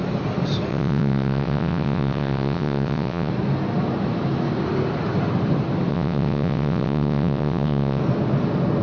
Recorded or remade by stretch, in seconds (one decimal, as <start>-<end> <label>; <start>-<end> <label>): 0.0-0.7 recorded; 0.7-3.3 remade; 3.3-5.9 recorded; 5.9-8.0 remade; 8.0-8.8 recorded